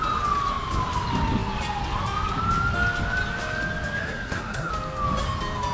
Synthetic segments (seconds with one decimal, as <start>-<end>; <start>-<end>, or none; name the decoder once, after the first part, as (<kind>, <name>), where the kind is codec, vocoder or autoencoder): 4.0-4.7 (codec, SNAC)